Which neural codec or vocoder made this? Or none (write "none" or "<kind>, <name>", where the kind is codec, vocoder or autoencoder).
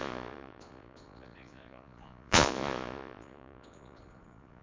vocoder, Vocos